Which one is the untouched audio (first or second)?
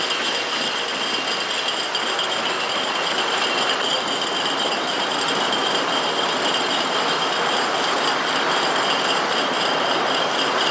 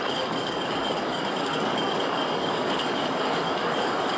first